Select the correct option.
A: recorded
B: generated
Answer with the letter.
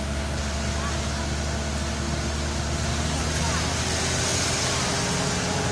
A